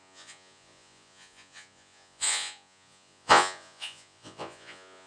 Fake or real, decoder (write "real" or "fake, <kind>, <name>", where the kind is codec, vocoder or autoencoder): fake, vocoder, Vocos